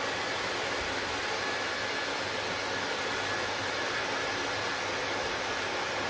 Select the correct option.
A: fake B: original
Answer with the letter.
B